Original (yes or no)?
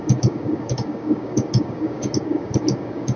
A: no